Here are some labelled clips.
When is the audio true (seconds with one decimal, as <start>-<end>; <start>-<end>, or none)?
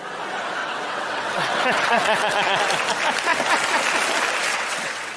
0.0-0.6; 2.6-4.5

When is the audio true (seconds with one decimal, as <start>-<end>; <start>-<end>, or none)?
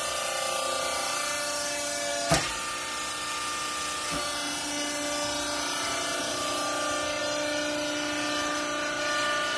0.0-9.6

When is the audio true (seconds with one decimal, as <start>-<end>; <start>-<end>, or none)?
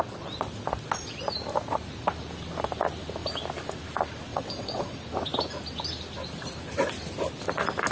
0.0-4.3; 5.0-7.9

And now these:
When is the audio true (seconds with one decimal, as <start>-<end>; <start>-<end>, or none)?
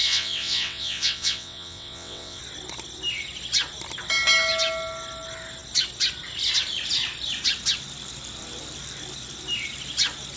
2.4-10.4